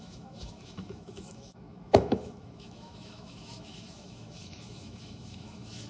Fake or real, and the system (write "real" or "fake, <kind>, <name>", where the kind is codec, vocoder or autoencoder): fake, autoencoder, DAC-VAE